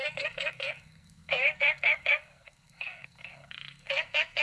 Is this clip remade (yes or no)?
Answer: yes